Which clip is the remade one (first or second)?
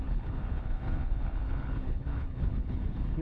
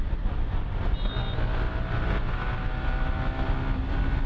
first